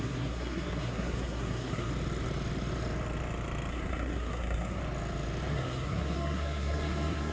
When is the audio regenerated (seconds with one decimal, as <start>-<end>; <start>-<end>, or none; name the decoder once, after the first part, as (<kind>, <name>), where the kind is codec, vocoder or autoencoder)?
0.0-1.9 (codec, SNAC); 3.7-4.8; 5.5-7.3